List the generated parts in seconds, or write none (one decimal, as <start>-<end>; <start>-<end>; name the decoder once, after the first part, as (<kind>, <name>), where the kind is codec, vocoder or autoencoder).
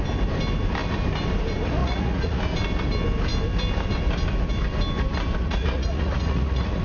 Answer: 1.8-2.4 (vocoder, Vocos); 5.4-6.8